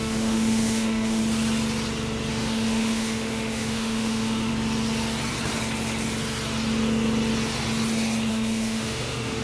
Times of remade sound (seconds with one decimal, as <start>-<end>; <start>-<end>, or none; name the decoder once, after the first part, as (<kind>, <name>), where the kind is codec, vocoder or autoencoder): 0.0-1.2 (autoencoder, DAC-VAE); 2.3-4.5; 8.3-9.4